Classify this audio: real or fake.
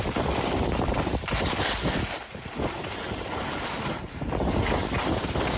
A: real